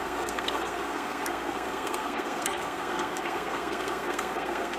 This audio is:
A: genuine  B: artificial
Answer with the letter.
B